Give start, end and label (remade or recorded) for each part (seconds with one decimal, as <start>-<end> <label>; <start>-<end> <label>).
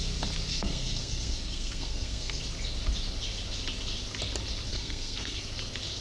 0.0-0.5 recorded; 0.5-2.4 remade; 2.4-4.7 recorded; 4.7-5.5 remade; 5.5-6.0 recorded